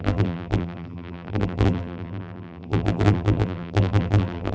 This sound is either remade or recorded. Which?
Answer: remade